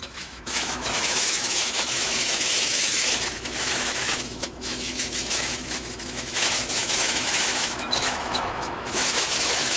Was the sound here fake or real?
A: fake